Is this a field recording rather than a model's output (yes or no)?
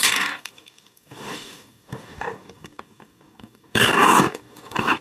no